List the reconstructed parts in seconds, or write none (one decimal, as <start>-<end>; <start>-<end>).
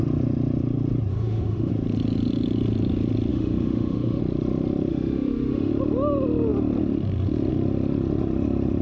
1.1-1.7; 3.3-4.2; 4.9-5.7